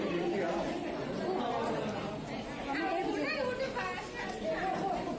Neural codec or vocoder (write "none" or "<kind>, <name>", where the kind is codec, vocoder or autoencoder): none